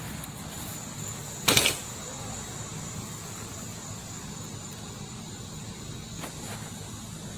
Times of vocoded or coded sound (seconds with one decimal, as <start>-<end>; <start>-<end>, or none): none